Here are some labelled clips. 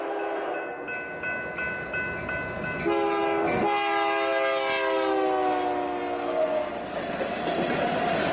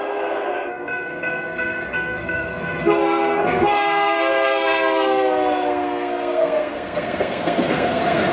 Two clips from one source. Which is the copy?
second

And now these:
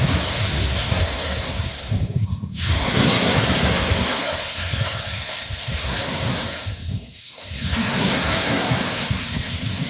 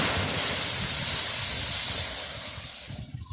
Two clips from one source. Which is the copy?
first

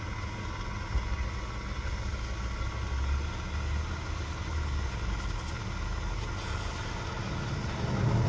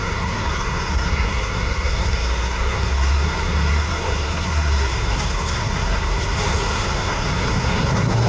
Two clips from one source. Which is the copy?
second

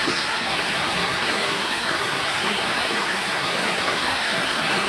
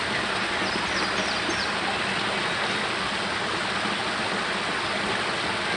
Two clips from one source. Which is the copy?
first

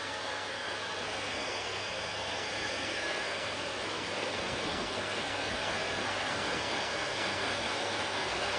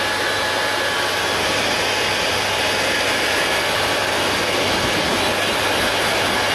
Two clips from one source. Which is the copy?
first